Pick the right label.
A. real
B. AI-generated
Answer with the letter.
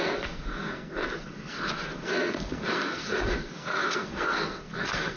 B